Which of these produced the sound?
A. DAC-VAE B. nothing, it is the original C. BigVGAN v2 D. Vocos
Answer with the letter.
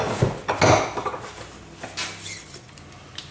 B